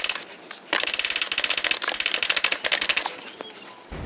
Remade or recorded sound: recorded